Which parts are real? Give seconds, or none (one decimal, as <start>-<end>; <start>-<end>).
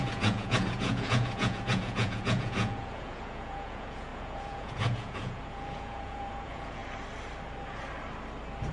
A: 6.8-8.7